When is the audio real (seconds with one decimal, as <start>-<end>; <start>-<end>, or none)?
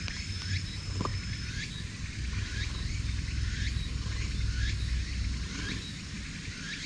0.0-6.9